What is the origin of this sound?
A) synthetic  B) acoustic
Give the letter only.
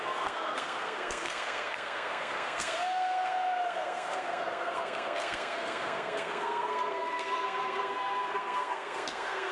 A